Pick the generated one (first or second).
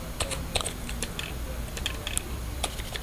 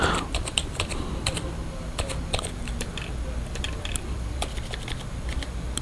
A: second